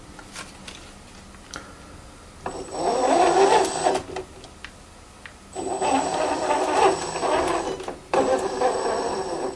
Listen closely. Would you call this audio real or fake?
real